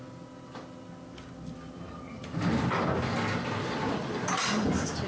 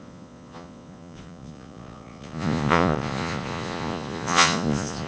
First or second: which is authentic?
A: first